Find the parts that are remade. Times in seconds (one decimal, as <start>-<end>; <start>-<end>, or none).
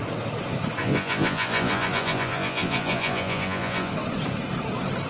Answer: 0.8-3.9